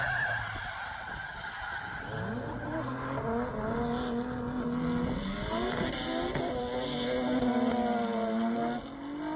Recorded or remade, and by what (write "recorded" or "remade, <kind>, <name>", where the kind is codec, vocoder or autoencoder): recorded